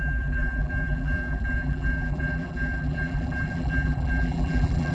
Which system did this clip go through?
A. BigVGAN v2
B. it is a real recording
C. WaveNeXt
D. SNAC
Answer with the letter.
A